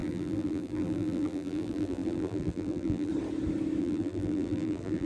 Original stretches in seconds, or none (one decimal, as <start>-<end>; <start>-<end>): 3.1-3.8